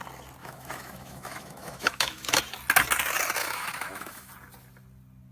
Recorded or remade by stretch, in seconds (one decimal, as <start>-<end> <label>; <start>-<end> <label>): 0.0-0.4 recorded; 0.4-2.4 remade; 2.4-3.4 recorded; 3.4-4.3 remade; 4.3-5.3 recorded